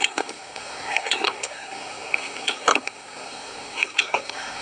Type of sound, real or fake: fake